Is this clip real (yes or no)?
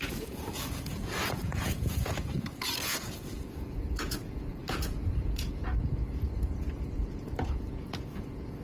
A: no